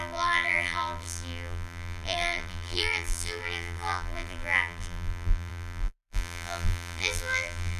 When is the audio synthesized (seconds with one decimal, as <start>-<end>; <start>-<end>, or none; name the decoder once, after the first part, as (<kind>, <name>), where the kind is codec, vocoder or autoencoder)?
0.0-7.8 (vocoder, BigVGAN v2)